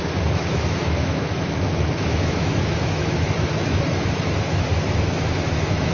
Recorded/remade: remade